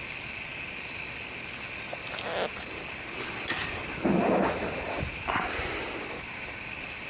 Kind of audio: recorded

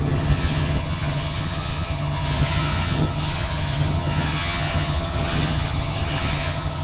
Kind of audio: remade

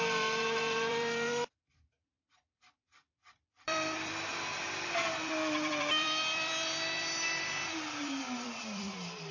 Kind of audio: remade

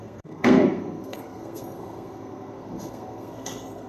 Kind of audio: remade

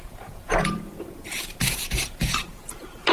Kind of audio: remade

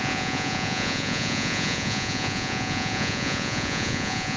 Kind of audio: remade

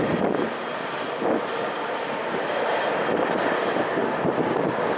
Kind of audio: recorded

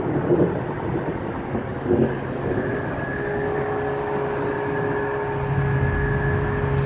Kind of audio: recorded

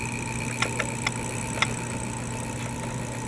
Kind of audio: recorded